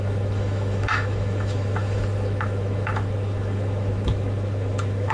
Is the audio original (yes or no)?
no